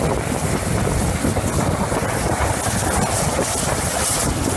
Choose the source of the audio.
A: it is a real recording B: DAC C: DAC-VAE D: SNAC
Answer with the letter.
A